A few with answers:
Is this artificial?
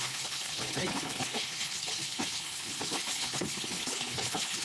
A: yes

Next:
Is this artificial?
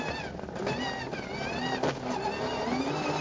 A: no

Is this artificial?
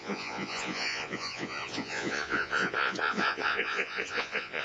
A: yes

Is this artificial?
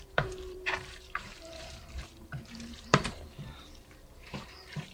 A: yes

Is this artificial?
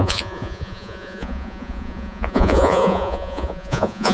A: yes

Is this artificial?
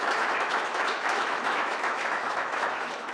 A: yes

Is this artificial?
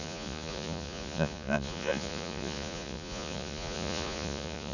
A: yes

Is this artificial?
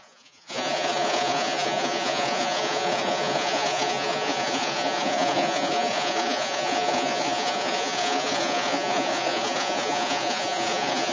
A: yes